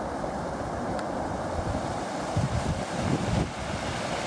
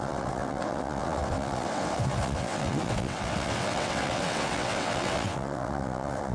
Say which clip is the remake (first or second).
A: second